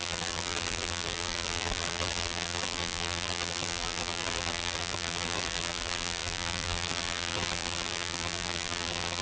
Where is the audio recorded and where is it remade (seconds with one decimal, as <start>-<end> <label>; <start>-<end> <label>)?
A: 0.0-9.2 remade